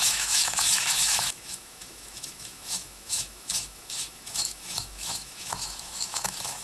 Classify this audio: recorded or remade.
remade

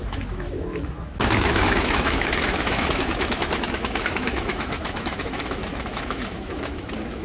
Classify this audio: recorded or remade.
remade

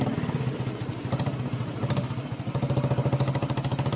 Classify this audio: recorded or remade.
recorded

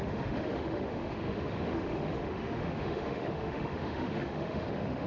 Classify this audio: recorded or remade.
remade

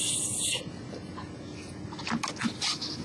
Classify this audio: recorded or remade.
recorded